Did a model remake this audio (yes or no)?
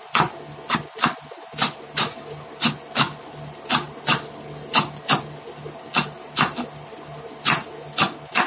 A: no